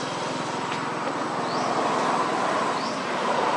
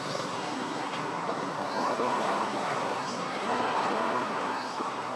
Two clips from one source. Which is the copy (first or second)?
second